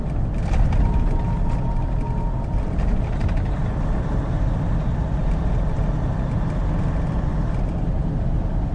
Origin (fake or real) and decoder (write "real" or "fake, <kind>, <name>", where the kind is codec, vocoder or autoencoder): real